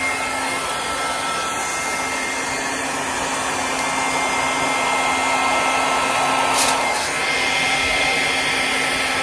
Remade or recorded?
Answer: recorded